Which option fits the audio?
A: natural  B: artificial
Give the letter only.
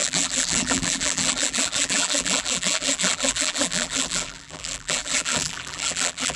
B